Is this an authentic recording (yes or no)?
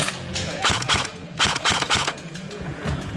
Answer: no